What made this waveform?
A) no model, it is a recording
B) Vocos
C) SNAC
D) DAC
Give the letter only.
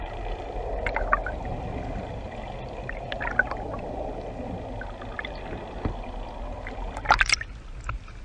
A